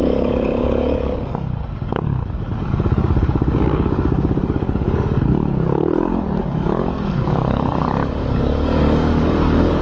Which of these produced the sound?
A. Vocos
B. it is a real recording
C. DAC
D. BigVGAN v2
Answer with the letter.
C